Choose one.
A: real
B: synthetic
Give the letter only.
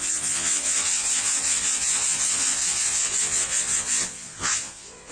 B